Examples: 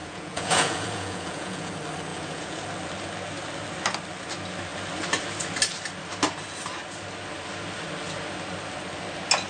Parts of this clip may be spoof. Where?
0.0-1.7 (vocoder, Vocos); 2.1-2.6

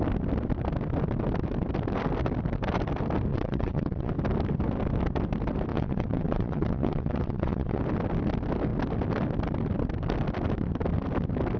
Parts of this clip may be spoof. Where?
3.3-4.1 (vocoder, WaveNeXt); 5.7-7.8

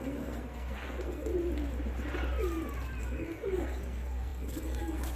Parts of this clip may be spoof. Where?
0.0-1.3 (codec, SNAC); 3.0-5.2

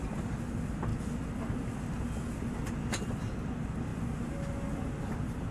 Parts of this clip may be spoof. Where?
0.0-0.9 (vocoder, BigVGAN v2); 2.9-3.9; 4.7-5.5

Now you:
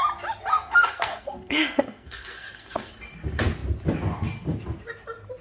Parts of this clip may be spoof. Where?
0.5-2.9 (codec, SNAC)

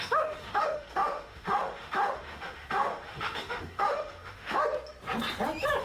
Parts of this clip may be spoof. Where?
0.0-4.6 (autoencoder, DAC-VAE)

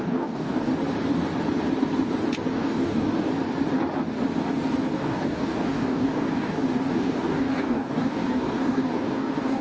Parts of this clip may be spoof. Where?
0.0-0.7 (codec, DAC); 2.5-3.3; 5.0-9.6

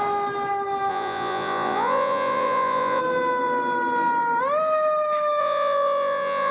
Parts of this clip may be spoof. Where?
0.9-3.0 (vocoder, Vocos); 5.4-6.5